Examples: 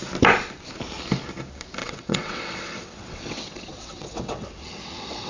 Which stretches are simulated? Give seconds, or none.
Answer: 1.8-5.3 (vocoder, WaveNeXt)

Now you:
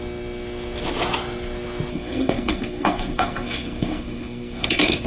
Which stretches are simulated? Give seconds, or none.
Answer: 1.9-5.1 (codec, SNAC)